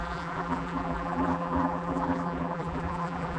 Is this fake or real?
fake